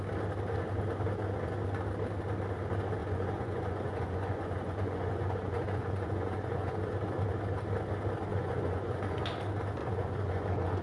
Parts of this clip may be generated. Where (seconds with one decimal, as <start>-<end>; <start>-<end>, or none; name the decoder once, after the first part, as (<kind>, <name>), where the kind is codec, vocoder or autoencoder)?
3.0-6.9 (vocoder, Vocos); 8.3-9.2; 9.8-10.8